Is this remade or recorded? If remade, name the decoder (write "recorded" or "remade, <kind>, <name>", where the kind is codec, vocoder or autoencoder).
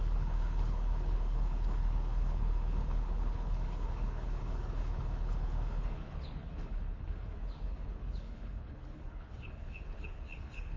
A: remade, codec, HILCodec